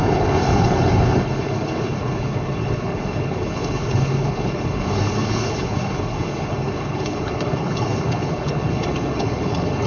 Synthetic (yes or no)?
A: yes